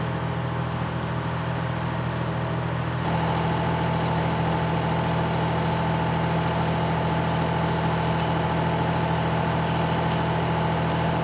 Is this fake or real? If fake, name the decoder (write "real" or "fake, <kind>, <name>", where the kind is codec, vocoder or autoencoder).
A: real